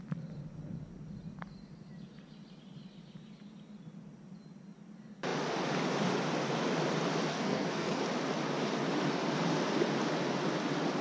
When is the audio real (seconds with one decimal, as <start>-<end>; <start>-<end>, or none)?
0.0-7.3; 8.0-11.0